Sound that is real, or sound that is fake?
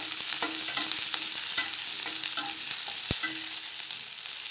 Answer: real